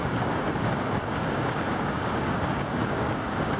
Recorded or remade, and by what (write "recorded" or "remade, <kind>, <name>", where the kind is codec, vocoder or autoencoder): remade, codec, DAC